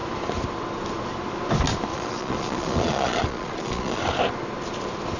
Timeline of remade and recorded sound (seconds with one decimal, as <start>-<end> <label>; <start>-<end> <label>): 0.0-1.9 recorded; 1.9-4.0 remade; 4.0-5.2 recorded